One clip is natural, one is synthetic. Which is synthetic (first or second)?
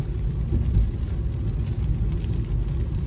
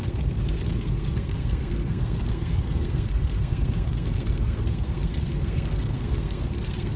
second